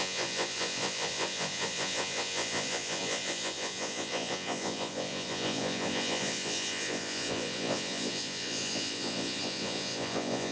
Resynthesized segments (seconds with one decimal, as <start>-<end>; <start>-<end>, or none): 0.0-10.5

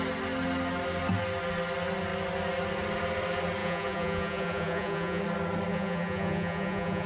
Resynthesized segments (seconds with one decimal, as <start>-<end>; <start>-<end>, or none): 3.6-5.2; 5.7-7.1

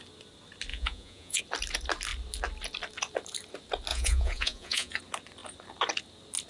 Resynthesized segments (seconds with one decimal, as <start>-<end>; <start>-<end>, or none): 0.7-1.4; 3.9-5.0

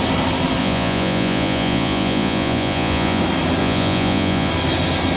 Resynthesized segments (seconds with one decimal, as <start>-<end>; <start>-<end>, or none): 0.6-3.2; 3.6-4.5

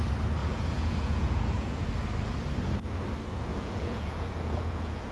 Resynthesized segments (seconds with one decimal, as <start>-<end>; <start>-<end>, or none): 0.4-1.9; 3.5-5.1

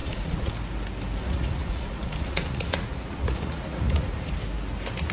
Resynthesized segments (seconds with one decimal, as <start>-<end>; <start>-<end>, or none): 0.0-0.5; 1.2-4.3

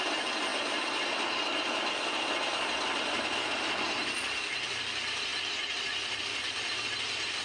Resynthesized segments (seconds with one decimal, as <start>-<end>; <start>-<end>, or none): none

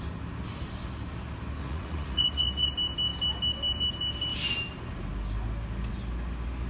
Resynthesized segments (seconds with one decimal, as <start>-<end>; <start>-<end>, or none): 1.6-2.7